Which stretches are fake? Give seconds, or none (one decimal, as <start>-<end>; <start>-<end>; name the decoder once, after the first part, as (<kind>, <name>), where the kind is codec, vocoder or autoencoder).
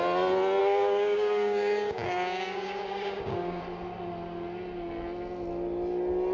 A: 0.6-3.6 (codec, DAC)